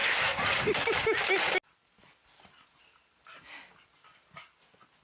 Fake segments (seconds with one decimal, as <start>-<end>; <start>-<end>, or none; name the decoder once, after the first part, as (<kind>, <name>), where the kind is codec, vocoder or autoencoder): none